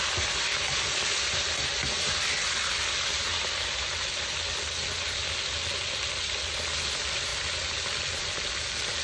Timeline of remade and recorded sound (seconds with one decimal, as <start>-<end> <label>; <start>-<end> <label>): 0.0-9.0 recorded